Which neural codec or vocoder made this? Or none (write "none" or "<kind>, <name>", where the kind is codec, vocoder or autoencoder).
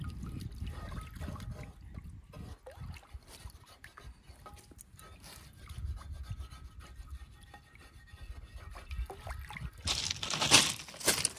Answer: none